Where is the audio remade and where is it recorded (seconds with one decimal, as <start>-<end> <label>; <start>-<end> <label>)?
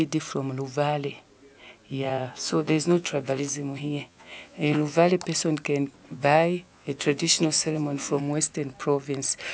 0.0-1.9 recorded; 1.9-5.1 remade; 5.1-6.1 recorded; 6.1-8.2 remade; 8.2-9.5 recorded